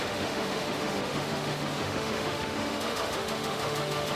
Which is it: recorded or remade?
remade